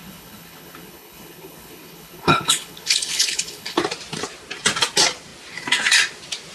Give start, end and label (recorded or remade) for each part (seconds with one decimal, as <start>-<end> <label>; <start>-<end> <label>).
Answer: 0.0-3.8 remade; 3.8-6.5 recorded